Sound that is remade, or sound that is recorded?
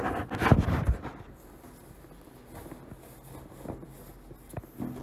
recorded